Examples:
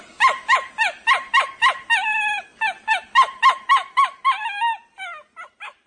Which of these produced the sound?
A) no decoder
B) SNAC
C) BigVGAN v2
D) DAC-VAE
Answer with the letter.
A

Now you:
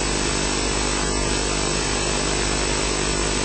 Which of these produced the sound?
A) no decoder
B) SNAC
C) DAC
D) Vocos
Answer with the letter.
A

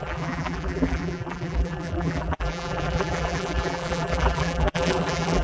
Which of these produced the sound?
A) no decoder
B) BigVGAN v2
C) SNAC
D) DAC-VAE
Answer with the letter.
B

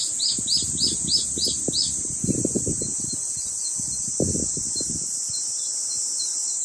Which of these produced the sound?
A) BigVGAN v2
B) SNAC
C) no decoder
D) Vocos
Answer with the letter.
C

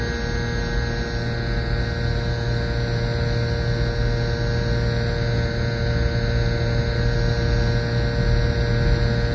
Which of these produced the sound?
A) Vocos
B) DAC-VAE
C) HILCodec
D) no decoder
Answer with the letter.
D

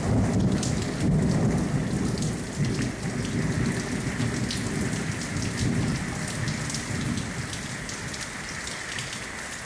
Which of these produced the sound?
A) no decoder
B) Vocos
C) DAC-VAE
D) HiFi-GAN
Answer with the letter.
A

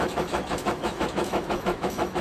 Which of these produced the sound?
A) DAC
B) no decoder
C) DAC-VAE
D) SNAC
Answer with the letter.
C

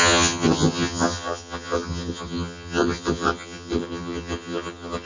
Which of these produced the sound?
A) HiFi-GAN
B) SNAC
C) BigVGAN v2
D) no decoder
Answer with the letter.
A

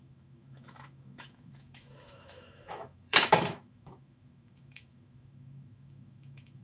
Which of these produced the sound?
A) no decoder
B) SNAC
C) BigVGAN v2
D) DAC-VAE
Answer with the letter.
D